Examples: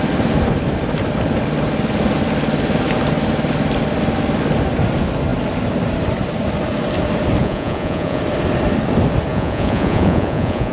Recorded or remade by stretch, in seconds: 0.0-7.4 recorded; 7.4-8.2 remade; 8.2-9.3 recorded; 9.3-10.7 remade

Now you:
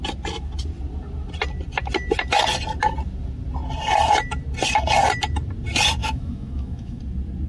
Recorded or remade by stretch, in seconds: 0.0-6.0 recorded; 6.0-7.0 remade; 7.0-7.5 recorded

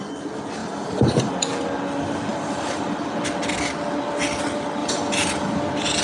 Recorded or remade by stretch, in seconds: 0.0-0.6 recorded; 0.6-1.3 remade; 1.3-2.3 recorded; 2.3-3.2 remade; 3.2-4.8 recorded; 4.8-5.6 remade; 5.6-6.0 recorded